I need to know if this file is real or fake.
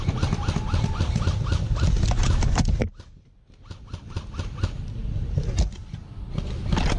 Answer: real